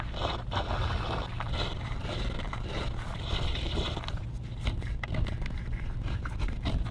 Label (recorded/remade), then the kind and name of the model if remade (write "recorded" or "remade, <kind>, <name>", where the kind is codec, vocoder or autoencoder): recorded